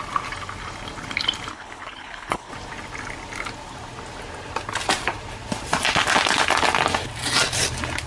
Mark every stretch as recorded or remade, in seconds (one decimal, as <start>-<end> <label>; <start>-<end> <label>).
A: 0.0-1.5 recorded; 1.5-2.5 remade; 2.5-8.1 recorded